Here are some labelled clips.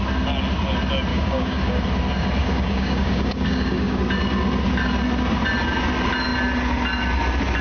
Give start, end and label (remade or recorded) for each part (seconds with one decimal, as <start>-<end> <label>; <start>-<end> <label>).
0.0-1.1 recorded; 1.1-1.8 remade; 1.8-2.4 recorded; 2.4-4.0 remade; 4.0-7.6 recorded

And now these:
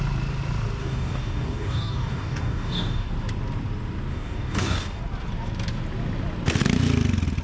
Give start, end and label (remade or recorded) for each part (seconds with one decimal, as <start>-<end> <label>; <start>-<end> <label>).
0.0-0.8 recorded; 0.8-3.1 remade; 3.1-4.1 recorded; 4.1-5.0 remade; 5.0-7.4 recorded

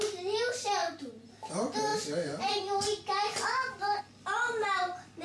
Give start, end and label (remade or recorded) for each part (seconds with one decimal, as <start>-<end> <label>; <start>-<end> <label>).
0.0-5.2 recorded

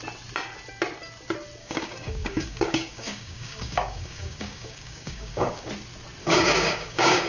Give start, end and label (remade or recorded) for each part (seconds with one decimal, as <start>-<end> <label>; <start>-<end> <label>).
0.0-1.6 recorded; 1.6-5.7 remade; 5.7-6.2 recorded; 6.2-7.3 remade

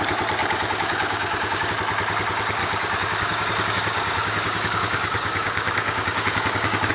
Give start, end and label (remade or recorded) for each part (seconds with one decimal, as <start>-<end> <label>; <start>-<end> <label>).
0.0-0.4 recorded; 0.4-1.7 remade; 1.7-2.6 recorded; 2.6-6.9 remade

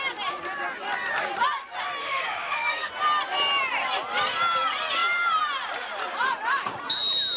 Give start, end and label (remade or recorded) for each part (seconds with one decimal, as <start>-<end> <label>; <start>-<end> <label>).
0.0-2.0 recorded; 2.0-2.9 remade; 2.9-7.4 recorded